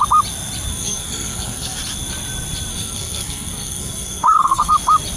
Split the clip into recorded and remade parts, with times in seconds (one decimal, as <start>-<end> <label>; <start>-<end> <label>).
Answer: 0.0-0.7 recorded; 0.7-1.8 remade; 1.8-2.7 recorded; 2.7-4.7 remade; 4.7-5.2 recorded